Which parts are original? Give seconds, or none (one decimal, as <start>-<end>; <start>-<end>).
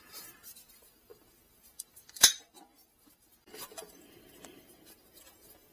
none